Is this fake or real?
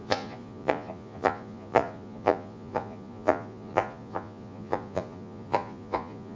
fake